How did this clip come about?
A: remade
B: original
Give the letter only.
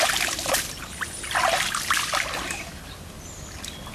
B